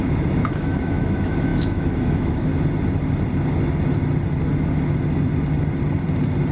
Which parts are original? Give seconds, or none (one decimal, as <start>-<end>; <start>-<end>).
2.5-6.5

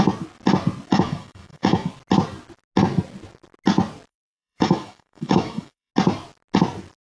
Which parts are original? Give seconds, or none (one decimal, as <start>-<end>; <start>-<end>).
0.0-0.9; 1.9-4.1; 5.9-7.1

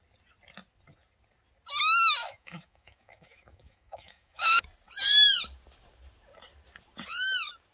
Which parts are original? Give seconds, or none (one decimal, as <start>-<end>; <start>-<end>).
0.0-2.2; 4.6-7.7

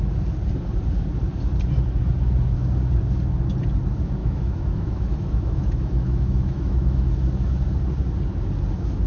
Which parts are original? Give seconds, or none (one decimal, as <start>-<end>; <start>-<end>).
0.0-4.2; 7.1-9.1

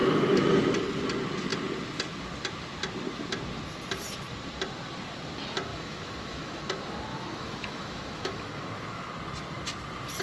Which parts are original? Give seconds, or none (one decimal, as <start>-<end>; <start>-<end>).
0.5-5.7; 6.6-7.1; 9.1-10.2

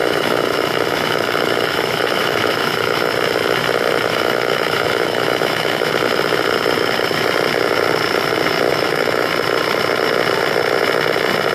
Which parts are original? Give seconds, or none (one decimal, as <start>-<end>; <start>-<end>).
3.1-4.1; 5.9-8.7; 9.3-11.5

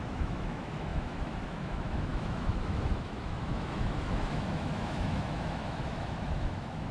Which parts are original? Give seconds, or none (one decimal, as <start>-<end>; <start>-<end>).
none

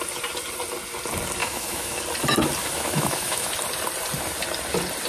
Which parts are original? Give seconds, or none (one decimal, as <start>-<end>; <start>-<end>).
0.0-1.4; 2.0-2.6; 3.5-5.1